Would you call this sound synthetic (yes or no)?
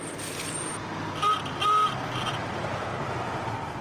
no